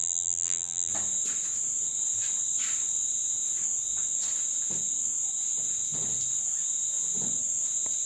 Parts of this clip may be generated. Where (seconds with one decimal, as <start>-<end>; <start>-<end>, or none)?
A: 0.0-0.9